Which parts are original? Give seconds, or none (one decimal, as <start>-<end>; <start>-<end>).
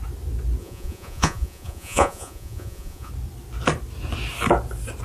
0.0-0.6; 3.1-5.0